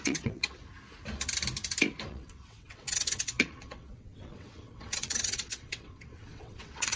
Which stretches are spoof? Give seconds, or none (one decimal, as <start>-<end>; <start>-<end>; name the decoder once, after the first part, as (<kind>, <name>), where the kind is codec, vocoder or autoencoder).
0.0-0.6 (vocoder, WaveNeXt); 2.1-7.0